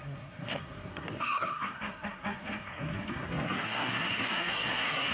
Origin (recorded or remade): remade